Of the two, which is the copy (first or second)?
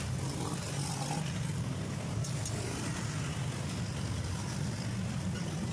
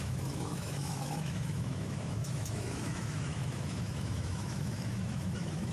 second